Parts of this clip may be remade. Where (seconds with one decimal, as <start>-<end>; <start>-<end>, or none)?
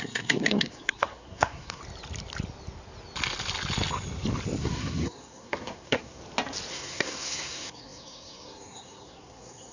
0.0-1.8; 4.6-6.2; 6.7-9.7